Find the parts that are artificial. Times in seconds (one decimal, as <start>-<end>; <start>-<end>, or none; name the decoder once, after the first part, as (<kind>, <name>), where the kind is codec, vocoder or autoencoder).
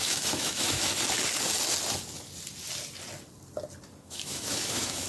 0.0-0.9 (autoencoder, DAC-VAE); 4.0-5.1